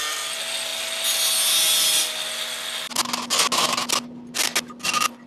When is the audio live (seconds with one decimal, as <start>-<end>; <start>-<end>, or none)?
0.0-5.3